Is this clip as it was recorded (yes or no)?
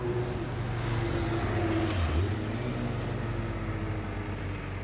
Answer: yes